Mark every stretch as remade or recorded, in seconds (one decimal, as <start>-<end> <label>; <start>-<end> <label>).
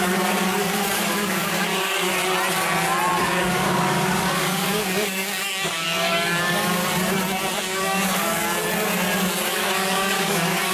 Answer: 0.0-2.1 remade; 2.1-3.2 recorded; 3.2-6.8 remade; 6.8-7.6 recorded; 7.6-8.3 remade; 8.3-9.5 recorded; 9.5-10.7 remade